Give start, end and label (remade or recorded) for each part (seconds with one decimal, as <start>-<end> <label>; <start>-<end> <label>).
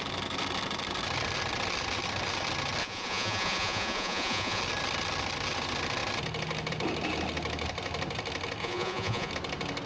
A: 0.0-2.8 recorded; 2.8-4.6 remade; 4.6-8.6 recorded; 8.6-9.3 remade; 9.3-9.9 recorded